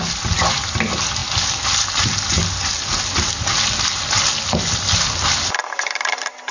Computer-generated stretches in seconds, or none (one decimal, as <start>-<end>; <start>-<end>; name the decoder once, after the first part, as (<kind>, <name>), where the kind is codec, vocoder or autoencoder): none